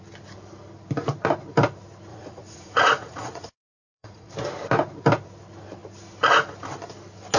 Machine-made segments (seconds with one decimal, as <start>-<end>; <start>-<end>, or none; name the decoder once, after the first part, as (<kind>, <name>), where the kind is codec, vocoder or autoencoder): 2.1-4.3 (vocoder, Vocos)